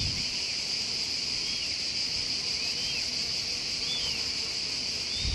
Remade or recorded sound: recorded